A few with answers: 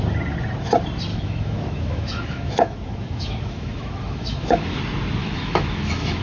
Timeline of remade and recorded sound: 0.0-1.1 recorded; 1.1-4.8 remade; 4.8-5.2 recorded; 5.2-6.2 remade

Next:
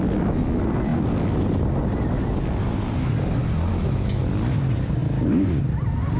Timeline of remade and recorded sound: 0.0-3.7 recorded; 3.7-4.2 remade; 4.2-6.2 recorded

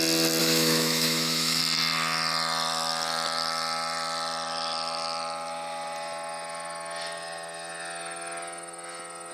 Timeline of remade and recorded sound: 0.0-0.4 recorded; 0.4-1.6 remade; 1.6-9.3 recorded

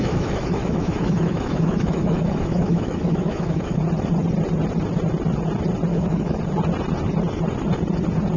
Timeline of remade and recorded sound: 0.0-3.8 remade; 3.8-5.9 recorded; 5.9-6.4 remade; 6.4-8.4 recorded